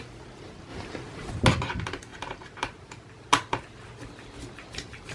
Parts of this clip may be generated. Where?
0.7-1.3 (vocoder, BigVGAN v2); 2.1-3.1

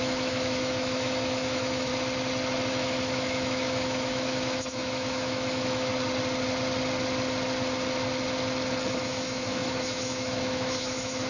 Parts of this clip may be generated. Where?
0.0-1.9 (autoencoder, DAC-VAE); 2.7-5.9; 9.0-11.3

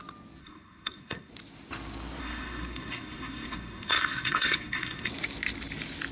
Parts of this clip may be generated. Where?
0.4-1.3 (codec, SNAC); 2.2-5.1

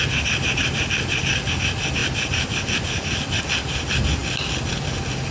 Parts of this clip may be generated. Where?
none

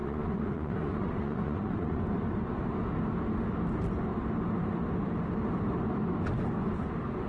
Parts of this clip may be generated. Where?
0.0-2.0 (vocoder, Vocos)

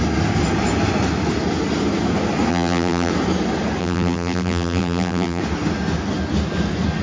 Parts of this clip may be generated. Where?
2.5-3.1 (vocoder, BigVGAN v2); 3.8-5.4